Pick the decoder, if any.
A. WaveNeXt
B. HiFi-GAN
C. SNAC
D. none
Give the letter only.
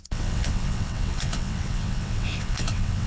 A